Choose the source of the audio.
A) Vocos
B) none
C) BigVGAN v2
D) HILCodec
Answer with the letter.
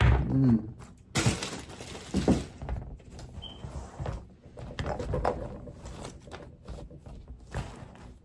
B